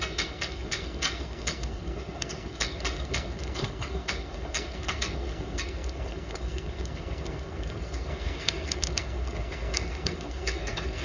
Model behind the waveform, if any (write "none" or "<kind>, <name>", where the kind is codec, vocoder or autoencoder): codec, SNAC